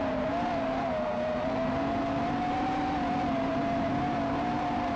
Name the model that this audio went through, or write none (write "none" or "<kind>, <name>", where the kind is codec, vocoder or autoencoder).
vocoder, BigVGAN v2